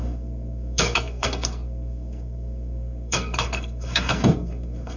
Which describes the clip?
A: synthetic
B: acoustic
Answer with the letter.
A